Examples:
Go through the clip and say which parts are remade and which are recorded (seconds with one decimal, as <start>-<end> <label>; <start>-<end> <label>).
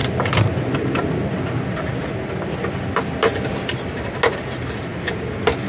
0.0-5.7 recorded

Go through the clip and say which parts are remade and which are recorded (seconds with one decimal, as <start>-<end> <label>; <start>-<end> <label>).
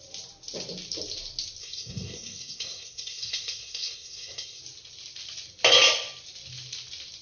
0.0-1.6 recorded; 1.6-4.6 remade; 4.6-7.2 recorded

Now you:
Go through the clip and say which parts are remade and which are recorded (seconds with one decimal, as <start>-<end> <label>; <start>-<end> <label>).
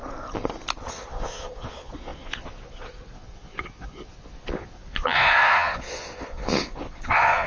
0.0-0.9 recorded; 0.9-7.5 remade